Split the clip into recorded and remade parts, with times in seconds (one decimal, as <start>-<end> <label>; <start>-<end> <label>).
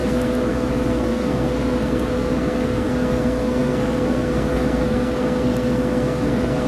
0.0-6.7 remade